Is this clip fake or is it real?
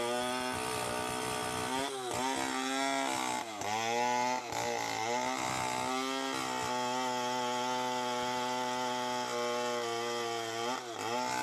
real